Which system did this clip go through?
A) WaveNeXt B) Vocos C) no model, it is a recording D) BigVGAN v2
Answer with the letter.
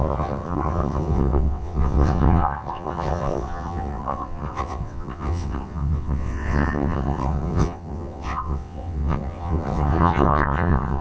A